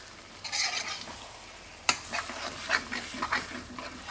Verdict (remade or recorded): recorded